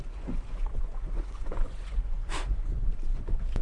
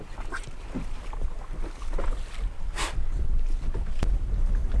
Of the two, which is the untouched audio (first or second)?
second